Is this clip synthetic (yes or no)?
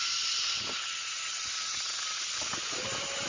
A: no